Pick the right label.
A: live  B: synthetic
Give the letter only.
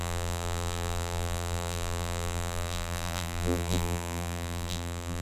B